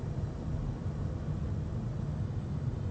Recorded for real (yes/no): yes